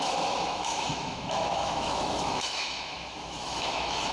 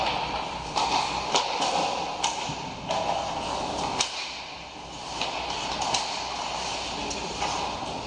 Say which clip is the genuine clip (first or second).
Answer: second